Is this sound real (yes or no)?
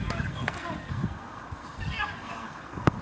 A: no